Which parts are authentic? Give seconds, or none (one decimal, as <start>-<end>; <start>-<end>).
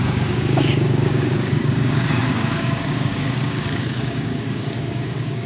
none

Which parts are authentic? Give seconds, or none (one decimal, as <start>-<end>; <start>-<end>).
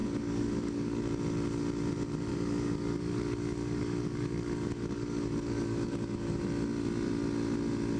1.0-2.3; 6.4-8.0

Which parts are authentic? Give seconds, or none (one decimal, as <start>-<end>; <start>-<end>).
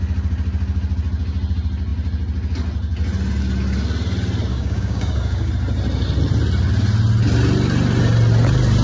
0.0-4.5; 5.5-8.8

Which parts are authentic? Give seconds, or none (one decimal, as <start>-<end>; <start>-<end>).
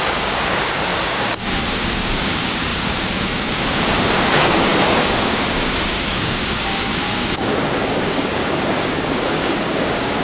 none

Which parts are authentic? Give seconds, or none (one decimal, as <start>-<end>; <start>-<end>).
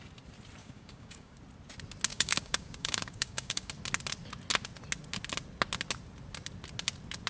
0.0-0.6; 1.4-2.1; 3.7-7.3